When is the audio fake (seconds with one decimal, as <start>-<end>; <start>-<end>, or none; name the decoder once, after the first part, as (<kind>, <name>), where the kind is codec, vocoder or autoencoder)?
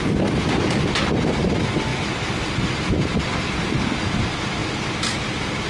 none